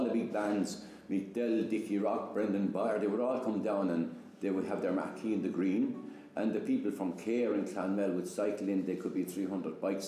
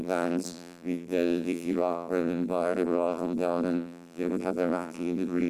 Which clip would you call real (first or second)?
first